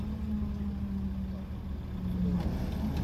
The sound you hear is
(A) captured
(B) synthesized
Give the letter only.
A